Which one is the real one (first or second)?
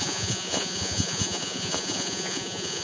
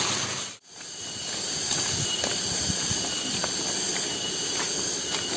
second